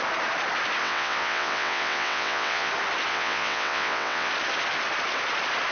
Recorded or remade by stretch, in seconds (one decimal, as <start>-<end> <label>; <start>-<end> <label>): 0.0-0.8 recorded; 0.8-2.7 remade; 2.7-3.1 recorded; 3.1-4.3 remade; 4.3-5.7 recorded